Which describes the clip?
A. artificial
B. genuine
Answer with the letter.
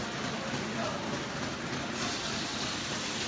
B